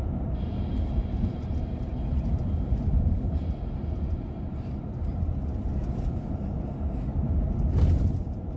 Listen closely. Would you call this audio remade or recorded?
remade